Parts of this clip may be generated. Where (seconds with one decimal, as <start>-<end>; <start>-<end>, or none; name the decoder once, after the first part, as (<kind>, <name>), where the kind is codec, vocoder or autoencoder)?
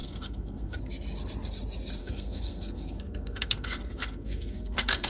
0.0-0.8 (codec, SNAC); 2.0-5.1